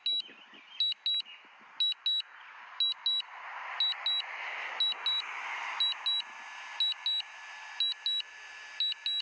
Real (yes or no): yes